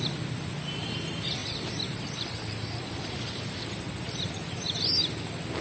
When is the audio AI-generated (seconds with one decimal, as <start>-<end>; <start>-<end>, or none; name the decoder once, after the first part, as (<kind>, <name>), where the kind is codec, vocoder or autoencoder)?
1.4-4.0 (vocoder, BigVGAN v2)